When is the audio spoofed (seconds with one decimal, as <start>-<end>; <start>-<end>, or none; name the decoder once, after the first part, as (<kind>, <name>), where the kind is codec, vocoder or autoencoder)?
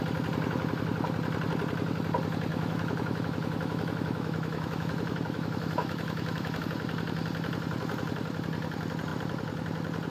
2.5-6.6 (autoencoder, DAC-VAE)